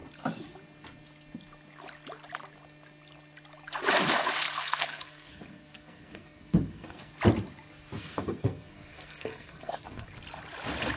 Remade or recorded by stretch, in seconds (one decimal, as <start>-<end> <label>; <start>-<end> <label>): 0.0-4.6 recorded; 4.6-7.1 remade; 7.1-8.0 recorded; 8.0-10.1 remade; 10.1-11.0 recorded